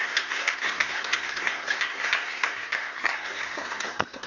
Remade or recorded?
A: remade